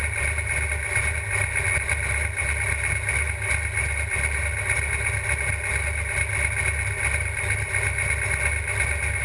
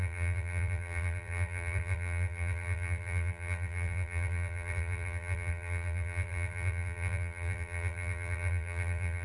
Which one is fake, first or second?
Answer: second